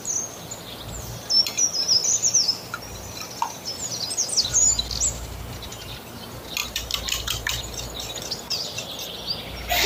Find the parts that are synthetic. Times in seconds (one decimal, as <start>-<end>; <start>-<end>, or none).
2.0-3.3; 6.6-8.2